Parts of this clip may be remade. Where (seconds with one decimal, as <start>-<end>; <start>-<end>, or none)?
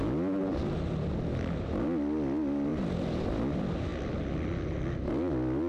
none